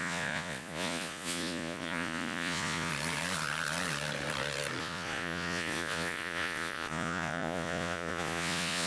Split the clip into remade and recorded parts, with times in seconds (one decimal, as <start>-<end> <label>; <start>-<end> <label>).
0.0-2.9 remade; 2.9-4.8 recorded; 4.8-8.9 remade